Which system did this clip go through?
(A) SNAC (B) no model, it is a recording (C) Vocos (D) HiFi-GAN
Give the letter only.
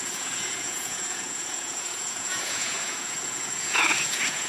C